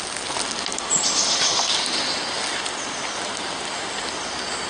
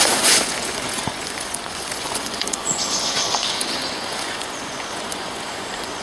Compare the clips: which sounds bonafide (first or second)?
first